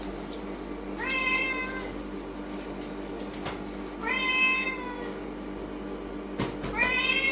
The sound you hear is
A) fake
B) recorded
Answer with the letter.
B